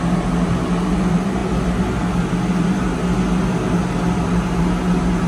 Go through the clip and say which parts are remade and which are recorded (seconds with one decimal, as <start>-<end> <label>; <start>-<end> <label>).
0.0-5.3 recorded